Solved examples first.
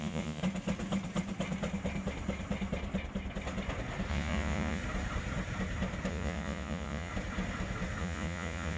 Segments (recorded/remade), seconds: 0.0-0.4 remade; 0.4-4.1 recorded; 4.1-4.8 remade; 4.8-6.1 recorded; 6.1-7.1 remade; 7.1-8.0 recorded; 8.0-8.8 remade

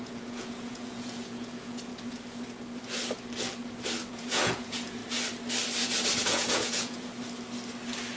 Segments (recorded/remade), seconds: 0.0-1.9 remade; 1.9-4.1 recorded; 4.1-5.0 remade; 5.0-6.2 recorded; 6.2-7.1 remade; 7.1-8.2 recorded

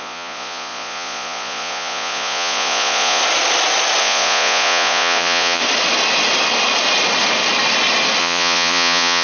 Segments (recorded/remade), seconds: 0.0-3.2 remade; 3.2-4.0 recorded; 4.0-5.6 remade; 5.6-8.2 recorded; 8.2-9.2 remade

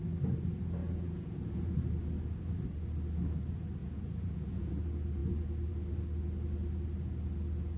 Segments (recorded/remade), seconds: 0.0-0.8 recorded; 0.8-1.8 remade; 1.8-3.8 recorded; 3.8-4.8 remade; 4.8-7.8 recorded

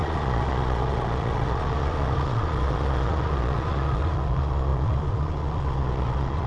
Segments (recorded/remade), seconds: 0.0-6.5 remade

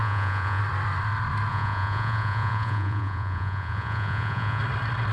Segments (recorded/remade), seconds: 0.0-0.6 remade; 0.6-1.5 recorded; 1.5-4.6 remade; 4.6-5.1 recorded